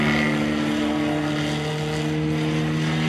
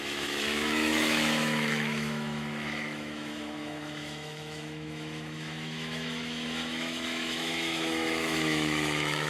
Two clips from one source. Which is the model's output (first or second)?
second